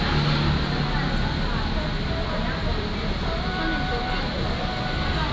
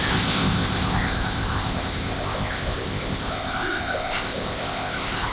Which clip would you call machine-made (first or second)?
second